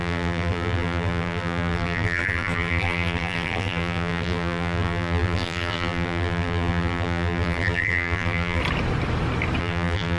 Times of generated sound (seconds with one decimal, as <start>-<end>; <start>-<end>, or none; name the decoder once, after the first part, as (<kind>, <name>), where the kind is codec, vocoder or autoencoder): 0.0-8.6 (vocoder, BigVGAN v2); 9.6-10.2